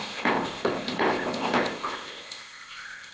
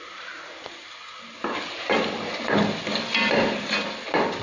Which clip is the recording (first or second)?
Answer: second